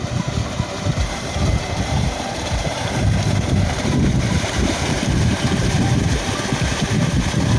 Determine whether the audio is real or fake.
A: fake